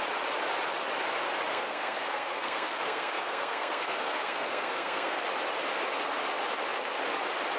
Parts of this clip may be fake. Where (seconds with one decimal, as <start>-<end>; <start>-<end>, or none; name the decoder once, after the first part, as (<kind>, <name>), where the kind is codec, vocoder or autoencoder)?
1.5-5.2 (codec, SNAC)